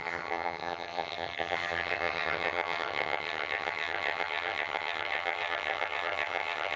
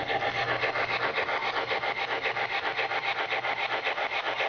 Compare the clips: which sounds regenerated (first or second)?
first